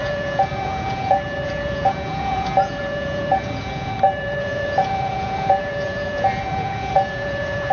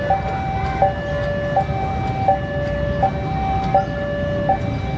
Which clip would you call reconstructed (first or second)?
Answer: first